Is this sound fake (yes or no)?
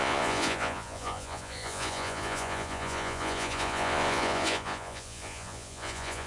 yes